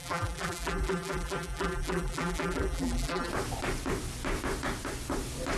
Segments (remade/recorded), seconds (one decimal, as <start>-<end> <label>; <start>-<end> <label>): 0.0-3.3 remade; 3.3-5.6 recorded